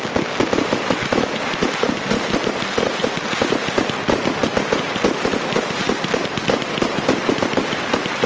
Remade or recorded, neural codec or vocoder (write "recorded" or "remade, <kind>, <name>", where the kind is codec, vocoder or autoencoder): recorded